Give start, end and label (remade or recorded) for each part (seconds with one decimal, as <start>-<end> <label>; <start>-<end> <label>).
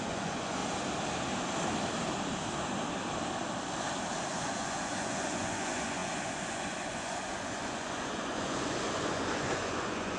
0.0-0.6 remade; 0.6-4.3 recorded; 4.3-10.2 remade